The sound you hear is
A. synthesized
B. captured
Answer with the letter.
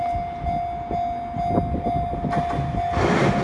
B